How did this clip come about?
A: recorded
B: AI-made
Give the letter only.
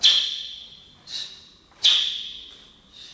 A